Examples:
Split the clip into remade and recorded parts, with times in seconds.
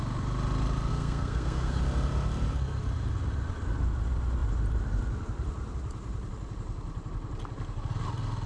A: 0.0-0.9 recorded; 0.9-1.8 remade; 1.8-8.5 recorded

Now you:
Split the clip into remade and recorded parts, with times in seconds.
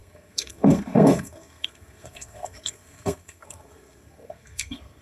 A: 0.0-5.0 remade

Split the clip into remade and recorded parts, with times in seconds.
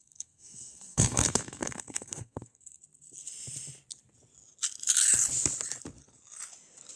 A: 0.0-2.8 remade; 2.8-7.0 recorded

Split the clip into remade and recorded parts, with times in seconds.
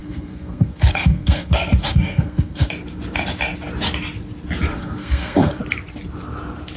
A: 0.0-2.7 remade; 2.7-4.7 recorded; 4.7-5.6 remade; 5.6-6.8 recorded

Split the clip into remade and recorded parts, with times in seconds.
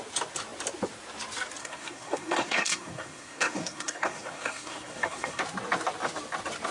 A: 0.0-1.6 recorded; 1.6-5.4 remade; 5.4-6.7 recorded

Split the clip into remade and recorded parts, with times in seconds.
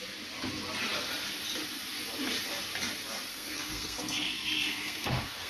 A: 0.0-3.3 recorded; 3.3-5.5 remade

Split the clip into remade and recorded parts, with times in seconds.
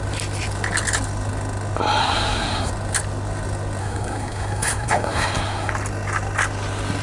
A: 0.0-2.0 recorded; 2.0-2.7 remade; 2.7-3.8 recorded; 3.8-5.7 remade; 5.7-7.0 recorded